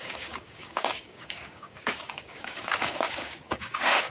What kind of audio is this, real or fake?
fake